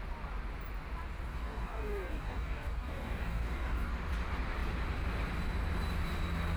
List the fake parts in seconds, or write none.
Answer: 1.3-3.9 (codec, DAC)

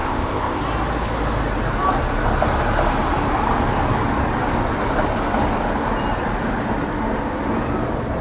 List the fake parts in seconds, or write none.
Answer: 0.0-0.6 (codec, ZipCodec)

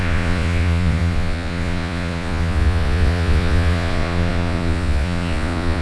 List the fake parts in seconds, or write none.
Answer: 0.0-5.8 (vocoder, Vocos)

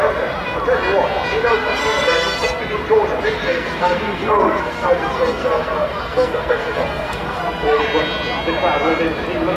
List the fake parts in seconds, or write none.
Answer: 1.5-2.6 (codec, SNAC); 3.4-7.8

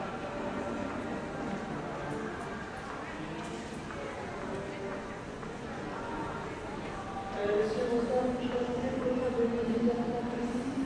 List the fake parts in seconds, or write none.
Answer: 4.9-6.3 (vocoder, Vocos)

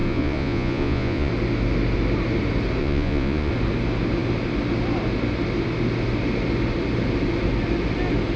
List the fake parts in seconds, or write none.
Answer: 0.0-1.3 (vocoder, Vocos); 2.8-3.5

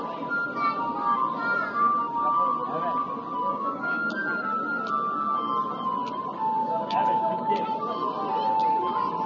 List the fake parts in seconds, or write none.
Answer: 3.5-4.1 (codec, DAC); 6.6-7.5